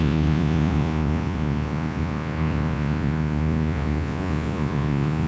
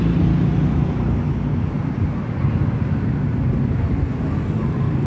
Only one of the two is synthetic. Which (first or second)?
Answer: first